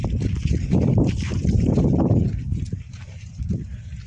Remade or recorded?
remade